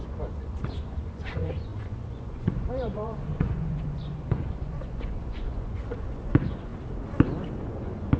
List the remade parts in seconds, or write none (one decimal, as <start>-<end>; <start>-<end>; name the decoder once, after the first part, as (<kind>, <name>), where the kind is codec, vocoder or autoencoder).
0.0-6.7 (vocoder, Vocos); 7.6-8.2